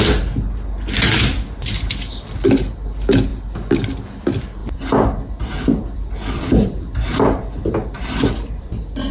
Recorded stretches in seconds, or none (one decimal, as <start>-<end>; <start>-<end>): 0.0-4.6; 8.7-9.1